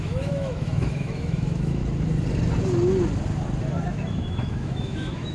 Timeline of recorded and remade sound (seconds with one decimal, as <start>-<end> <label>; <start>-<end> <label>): 0.0-1.8 remade; 1.8-3.9 recorded; 3.9-5.3 remade